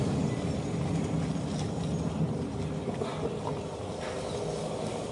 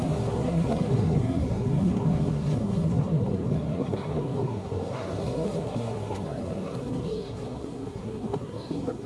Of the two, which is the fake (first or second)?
second